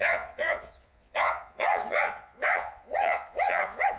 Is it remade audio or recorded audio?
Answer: remade